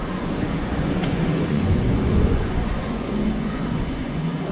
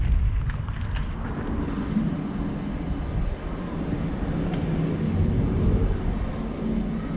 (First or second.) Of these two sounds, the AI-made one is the first